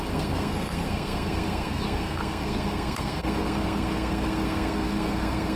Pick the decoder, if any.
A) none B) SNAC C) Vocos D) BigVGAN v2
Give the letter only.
B